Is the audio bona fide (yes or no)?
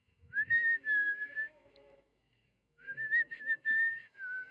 no